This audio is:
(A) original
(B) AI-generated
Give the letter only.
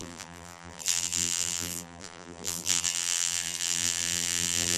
B